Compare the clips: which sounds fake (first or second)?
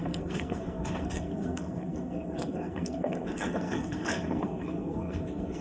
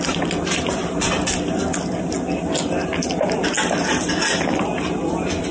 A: first